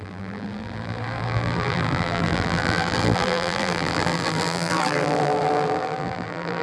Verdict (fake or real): fake